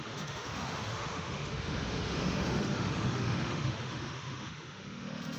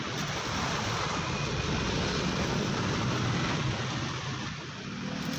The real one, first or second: second